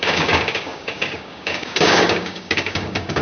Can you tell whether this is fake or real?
fake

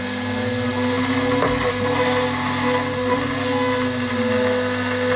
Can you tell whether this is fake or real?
real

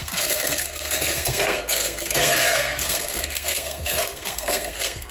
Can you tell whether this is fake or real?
fake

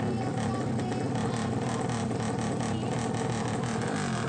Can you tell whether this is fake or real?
real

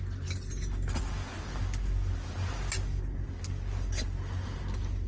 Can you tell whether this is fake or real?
real